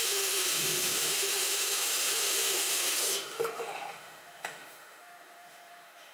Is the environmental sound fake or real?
fake